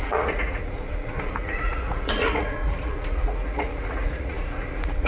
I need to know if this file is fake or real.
fake